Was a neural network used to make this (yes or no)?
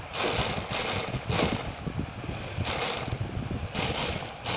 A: no